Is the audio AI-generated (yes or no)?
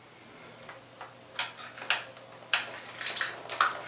no